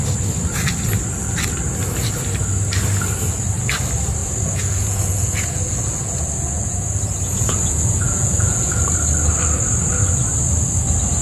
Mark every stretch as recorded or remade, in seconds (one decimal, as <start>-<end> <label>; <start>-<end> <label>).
0.0-4.2 recorded; 4.2-8.8 remade; 8.8-11.2 recorded